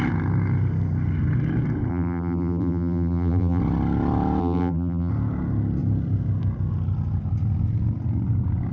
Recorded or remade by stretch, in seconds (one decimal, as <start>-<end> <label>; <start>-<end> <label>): 0.0-1.9 recorded; 1.9-3.6 remade; 3.6-4.4 recorded; 4.4-5.1 remade; 5.1-8.7 recorded